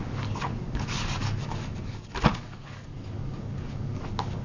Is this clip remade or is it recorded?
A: remade